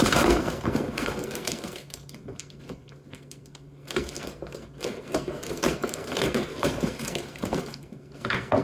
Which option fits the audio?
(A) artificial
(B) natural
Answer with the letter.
A